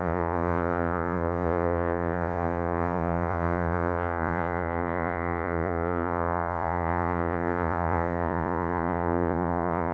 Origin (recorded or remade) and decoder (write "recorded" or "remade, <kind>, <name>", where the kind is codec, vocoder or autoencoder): remade, vocoder, Vocos